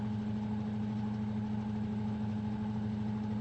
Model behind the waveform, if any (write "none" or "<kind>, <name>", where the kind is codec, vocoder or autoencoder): none